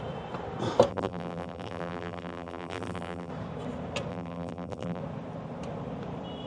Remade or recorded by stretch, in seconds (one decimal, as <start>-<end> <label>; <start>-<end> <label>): 0.0-0.9 recorded; 0.9-3.3 remade; 3.3-4.1 recorded; 4.1-5.0 remade; 5.0-6.5 recorded